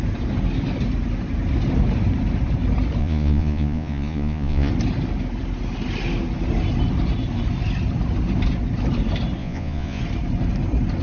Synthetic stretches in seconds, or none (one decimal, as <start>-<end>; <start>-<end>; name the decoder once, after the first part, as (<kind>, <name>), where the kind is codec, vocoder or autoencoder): 3.0-4.7 (vocoder, Vocos); 9.4-10.0